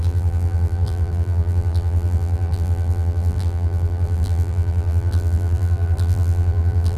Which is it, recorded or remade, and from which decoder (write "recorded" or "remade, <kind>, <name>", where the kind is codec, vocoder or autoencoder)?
remade, vocoder, BigVGAN v2